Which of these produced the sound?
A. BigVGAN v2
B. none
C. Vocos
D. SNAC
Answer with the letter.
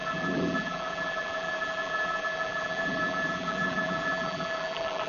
A